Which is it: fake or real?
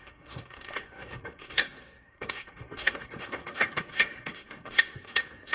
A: fake